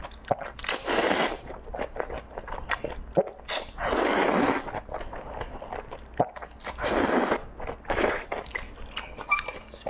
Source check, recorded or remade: recorded